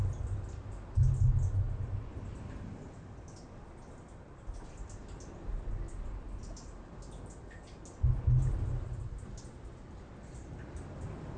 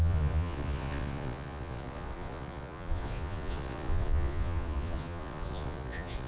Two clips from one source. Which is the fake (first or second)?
second